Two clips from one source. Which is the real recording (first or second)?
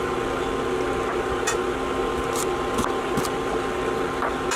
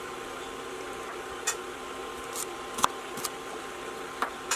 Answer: first